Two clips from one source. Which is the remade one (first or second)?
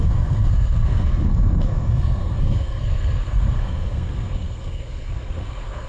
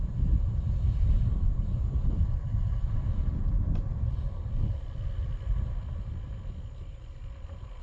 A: first